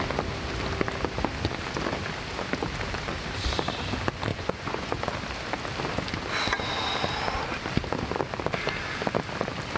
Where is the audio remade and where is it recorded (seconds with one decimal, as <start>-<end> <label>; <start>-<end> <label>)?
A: 0.0-4.3 recorded; 4.3-5.0 remade; 5.0-9.8 recorded